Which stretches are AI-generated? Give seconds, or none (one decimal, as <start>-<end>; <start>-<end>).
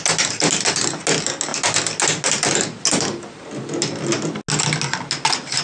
none